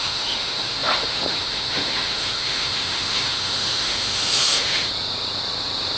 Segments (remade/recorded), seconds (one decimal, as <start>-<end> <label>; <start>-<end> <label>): 0.0-4.9 remade; 4.9-6.0 recorded